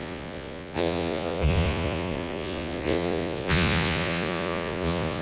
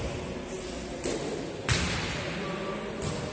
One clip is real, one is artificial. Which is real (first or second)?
second